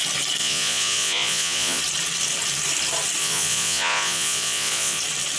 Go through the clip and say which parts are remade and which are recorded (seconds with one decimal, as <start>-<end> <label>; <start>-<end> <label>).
0.0-0.4 recorded; 0.4-1.8 remade; 1.8-3.2 recorded; 3.2-5.0 remade; 5.0-5.4 recorded